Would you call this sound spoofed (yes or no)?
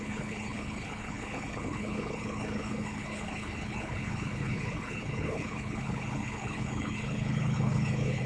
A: yes